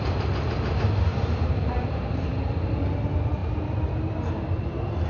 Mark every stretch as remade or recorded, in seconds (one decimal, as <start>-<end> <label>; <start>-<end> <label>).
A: 0.0-1.1 recorded; 1.1-2.5 remade; 2.5-5.1 recorded